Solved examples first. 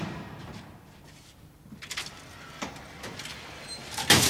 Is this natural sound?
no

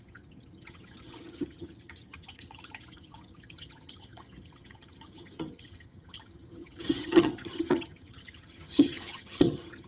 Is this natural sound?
no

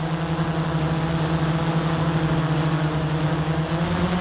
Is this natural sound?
yes